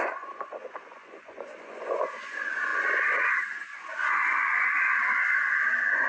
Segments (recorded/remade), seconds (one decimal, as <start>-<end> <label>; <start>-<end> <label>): 0.0-6.1 remade